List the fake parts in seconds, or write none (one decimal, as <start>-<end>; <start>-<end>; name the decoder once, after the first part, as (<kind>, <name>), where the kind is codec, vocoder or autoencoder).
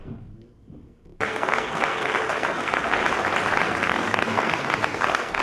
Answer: 0.0-3.0 (codec, SNAC); 3.6-5.4